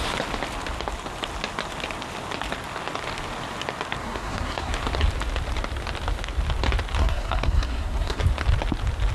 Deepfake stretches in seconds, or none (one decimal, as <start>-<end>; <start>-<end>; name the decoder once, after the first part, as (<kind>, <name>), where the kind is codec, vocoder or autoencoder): 4.0-4.7 (codec, SNAC); 7.0-8.2